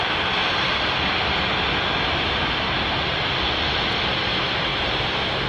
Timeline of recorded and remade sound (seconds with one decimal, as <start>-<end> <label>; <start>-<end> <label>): 0.0-5.5 recorded